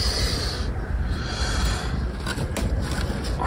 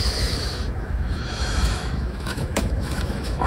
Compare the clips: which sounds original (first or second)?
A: first